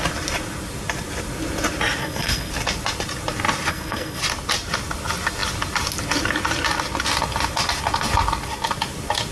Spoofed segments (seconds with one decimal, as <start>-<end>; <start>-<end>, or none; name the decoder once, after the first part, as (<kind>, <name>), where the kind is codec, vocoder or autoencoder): 2.0-2.5 (codec, SNAC); 3.7-4.2